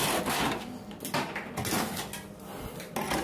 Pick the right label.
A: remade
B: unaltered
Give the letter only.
B